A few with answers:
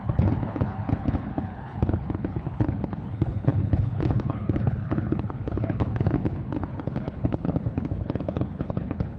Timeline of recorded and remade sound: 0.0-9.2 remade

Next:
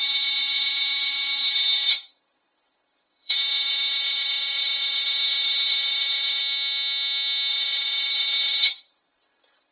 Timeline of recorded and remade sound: 0.0-6.4 remade; 6.4-7.5 recorded; 7.5-9.7 remade

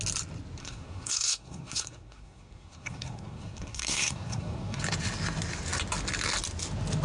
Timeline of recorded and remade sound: 0.0-0.6 recorded; 0.6-4.8 remade; 4.8-7.0 recorded

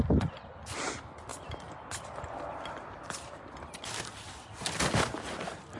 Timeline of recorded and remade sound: 0.0-5.8 recorded

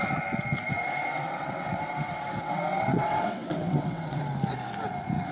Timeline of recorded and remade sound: 0.0-1.0 recorded; 1.0-4.2 remade; 4.2-5.3 recorded

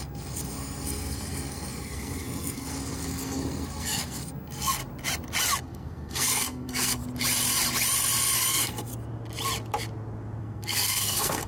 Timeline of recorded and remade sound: 0.0-4.8 remade; 4.8-5.6 recorded; 5.6-7.0 remade; 7.0-8.5 recorded; 8.5-8.9 remade; 8.9-10.4 recorded; 10.4-11.5 remade

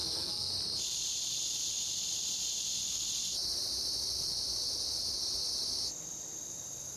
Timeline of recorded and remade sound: 0.0-0.5 remade; 0.5-7.0 recorded

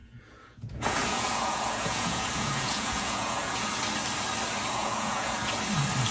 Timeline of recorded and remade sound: 0.0-3.7 remade; 3.7-4.8 recorded; 4.8-5.5 remade; 5.5-6.1 recorded